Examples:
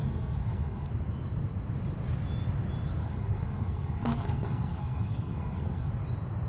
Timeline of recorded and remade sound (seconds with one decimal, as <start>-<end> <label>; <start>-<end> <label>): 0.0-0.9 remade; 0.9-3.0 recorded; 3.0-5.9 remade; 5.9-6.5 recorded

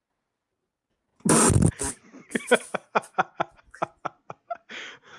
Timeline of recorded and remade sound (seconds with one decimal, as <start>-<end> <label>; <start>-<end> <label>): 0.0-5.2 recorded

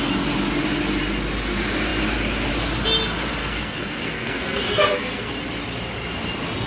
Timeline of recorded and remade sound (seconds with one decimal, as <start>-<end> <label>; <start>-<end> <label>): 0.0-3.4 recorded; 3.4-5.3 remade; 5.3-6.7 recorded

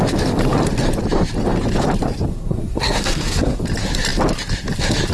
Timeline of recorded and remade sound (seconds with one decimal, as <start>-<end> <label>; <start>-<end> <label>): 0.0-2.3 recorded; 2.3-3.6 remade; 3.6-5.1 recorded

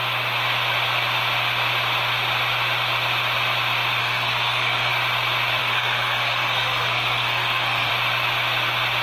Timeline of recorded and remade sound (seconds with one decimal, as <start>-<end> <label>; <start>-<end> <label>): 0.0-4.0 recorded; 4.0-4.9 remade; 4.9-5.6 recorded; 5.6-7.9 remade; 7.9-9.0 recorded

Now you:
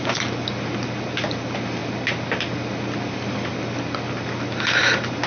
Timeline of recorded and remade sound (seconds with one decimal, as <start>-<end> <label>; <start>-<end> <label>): 0.0-5.3 recorded